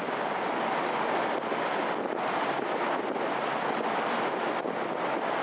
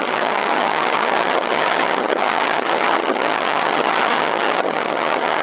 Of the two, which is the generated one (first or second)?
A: second